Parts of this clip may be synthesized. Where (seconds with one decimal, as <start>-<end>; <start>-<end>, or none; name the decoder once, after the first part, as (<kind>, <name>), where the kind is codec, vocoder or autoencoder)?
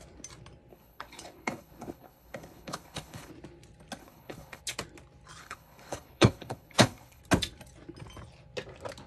0.7-3.3 (codec, HILCodec); 4.0-4.6; 5.4-7.2